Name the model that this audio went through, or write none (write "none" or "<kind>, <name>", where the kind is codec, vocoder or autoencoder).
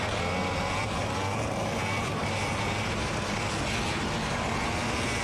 none